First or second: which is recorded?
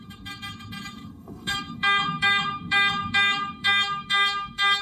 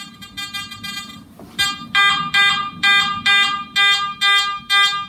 second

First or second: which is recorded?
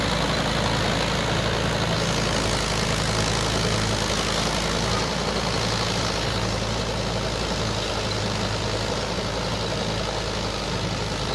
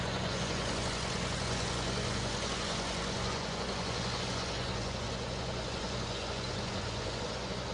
first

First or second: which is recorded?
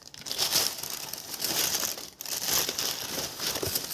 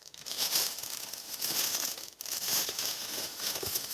first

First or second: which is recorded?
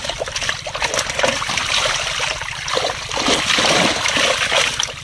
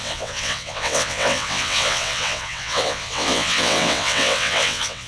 first